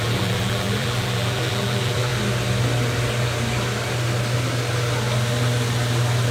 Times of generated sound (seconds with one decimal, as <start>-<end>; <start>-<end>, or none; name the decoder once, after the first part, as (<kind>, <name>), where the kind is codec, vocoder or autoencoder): 0.0-2.1 (vocoder, BigVGAN v2)